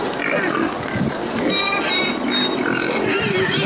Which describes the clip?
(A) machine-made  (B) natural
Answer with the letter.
B